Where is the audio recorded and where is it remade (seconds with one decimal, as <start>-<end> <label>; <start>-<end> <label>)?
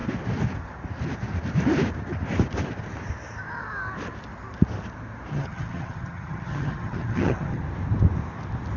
0.0-5.3 recorded; 5.3-7.6 remade; 7.6-8.8 recorded